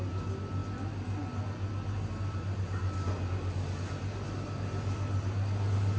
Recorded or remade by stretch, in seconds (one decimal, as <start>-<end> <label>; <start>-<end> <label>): 0.0-6.0 recorded